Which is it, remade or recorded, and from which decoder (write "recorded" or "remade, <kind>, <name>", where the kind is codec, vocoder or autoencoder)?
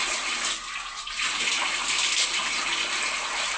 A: recorded